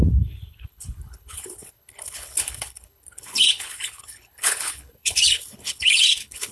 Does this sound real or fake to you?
fake